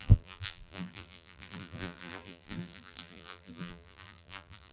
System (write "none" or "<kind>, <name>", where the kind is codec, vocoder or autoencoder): vocoder, BigVGAN v2